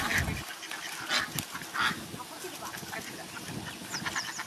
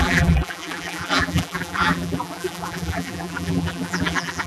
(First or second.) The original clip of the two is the first